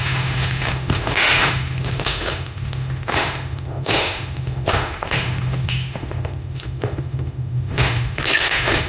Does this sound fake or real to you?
fake